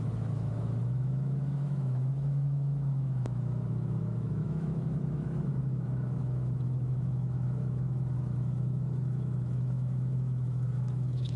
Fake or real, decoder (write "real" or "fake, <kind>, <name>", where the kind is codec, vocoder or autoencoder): fake, autoencoder, DAC-VAE